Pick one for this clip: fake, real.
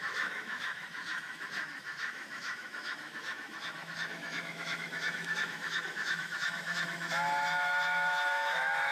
fake